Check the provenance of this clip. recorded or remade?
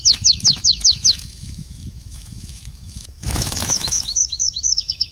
remade